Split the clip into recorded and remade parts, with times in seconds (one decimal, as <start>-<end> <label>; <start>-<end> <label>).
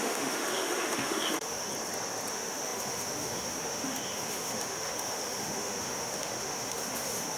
0.0-1.7 remade; 1.7-2.3 recorded; 2.3-7.4 remade